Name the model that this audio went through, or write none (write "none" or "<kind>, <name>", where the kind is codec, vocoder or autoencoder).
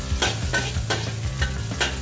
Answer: none